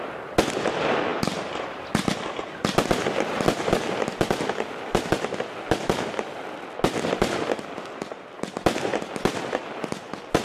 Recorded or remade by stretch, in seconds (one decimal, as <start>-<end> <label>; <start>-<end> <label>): 0.0-10.4 recorded